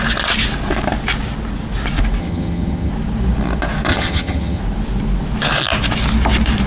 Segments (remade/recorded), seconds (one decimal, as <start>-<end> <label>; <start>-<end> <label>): 0.0-2.2 recorded; 2.2-2.9 remade; 2.9-3.9 recorded; 3.9-4.6 remade; 4.6-6.7 recorded